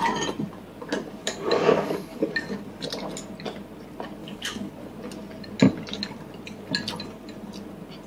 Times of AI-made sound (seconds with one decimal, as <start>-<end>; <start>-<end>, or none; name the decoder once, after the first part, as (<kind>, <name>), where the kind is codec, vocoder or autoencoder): 1.2-2.3 (codec, DAC); 4.2-4.7